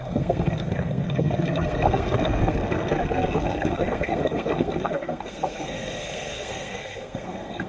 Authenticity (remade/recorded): remade